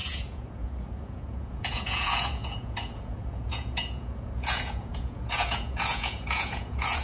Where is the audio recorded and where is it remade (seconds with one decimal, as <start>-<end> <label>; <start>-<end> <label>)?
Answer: 0.0-7.0 remade